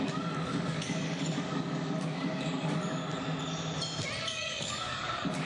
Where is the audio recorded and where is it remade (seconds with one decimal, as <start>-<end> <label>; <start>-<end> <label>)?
0.0-3.0 remade; 3.0-4.2 recorded; 4.2-5.4 remade